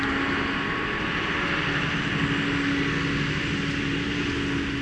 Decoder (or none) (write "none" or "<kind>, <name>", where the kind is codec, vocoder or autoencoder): none